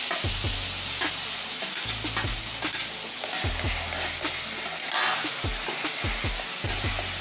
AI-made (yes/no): no